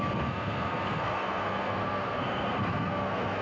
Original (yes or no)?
no